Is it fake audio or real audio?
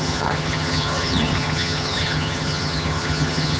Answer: fake